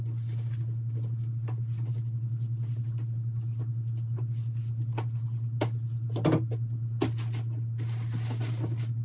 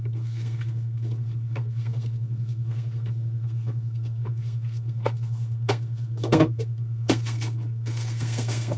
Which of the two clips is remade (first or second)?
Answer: second